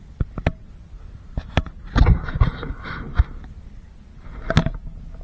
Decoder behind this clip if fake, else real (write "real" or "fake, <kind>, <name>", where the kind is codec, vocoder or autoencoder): real